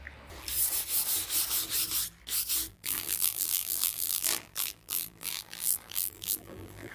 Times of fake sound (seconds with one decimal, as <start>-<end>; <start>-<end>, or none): 2.7-6.9